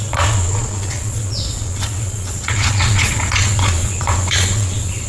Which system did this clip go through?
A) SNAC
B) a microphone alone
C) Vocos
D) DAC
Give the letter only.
C